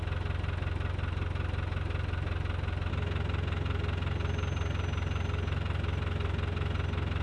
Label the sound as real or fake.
real